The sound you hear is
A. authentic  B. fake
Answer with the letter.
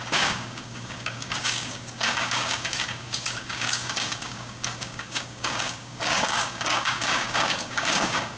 B